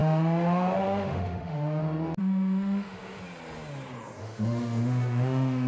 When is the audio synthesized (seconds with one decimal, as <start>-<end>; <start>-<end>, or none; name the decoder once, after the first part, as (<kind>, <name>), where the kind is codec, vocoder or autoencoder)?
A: 0.0-1.8 (autoencoder, DAC-VAE); 2.2-3.2; 4.2-5.7